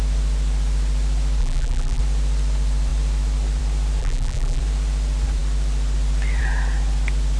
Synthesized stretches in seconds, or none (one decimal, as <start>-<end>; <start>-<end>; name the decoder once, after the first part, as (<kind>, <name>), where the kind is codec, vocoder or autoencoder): 1.4-2.0 (vocoder, BigVGAN v2); 4.0-4.6